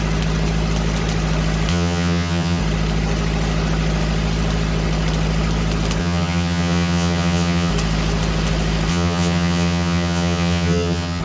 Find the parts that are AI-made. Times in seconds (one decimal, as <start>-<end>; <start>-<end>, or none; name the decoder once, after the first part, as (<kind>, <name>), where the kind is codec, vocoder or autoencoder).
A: 1.7-2.6 (vocoder, HiFi-GAN); 6.0-7.7; 8.9-11.2